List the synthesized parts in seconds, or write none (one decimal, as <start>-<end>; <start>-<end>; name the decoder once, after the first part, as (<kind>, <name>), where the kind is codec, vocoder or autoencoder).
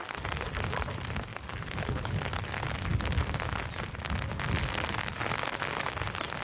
1.3-2.1 (codec, HILCodec)